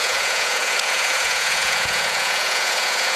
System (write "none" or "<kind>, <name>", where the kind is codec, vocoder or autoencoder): vocoder, Vocos